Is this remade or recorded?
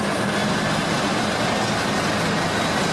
recorded